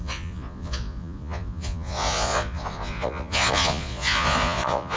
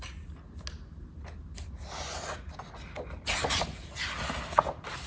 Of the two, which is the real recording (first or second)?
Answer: second